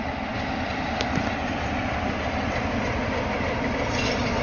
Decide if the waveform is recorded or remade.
recorded